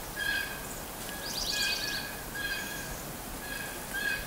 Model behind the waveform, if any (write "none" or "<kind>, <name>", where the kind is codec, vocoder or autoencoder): none